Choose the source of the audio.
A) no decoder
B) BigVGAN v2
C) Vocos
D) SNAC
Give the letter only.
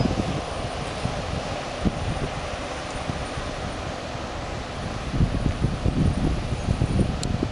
A